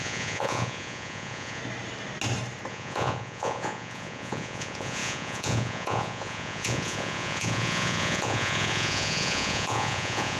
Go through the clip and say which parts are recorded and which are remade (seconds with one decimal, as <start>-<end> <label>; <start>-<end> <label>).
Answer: 0.0-1.6 remade; 1.6-2.7 recorded; 2.7-10.4 remade

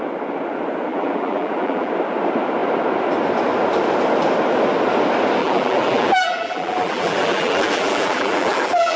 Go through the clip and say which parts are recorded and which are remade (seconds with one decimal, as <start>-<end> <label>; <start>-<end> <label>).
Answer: 0.0-0.9 recorded; 0.9-1.9 remade; 1.9-5.4 recorded; 5.4-9.0 remade